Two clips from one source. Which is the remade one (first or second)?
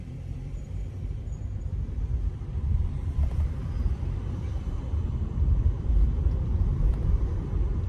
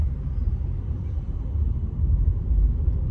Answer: first